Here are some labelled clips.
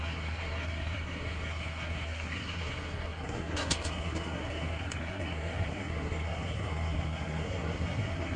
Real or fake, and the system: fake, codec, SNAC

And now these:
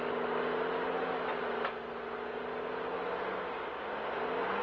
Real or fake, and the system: real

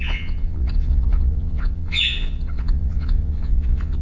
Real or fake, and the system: fake, vocoder, Vocos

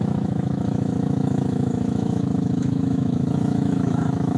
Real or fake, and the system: fake, autoencoder, DAC-VAE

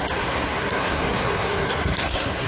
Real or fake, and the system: fake, codec, SNAC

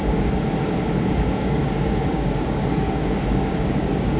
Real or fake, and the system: fake, codec, DAC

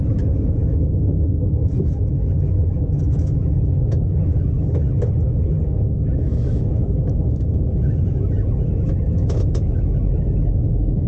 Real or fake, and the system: fake, autoencoder, DAC-VAE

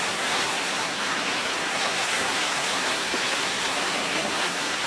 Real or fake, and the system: fake, codec, SNAC